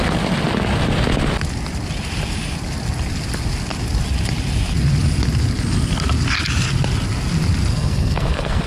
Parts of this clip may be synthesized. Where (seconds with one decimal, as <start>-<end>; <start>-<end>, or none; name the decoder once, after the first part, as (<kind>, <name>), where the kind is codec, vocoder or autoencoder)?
7.7-8.7 (codec, SNAC)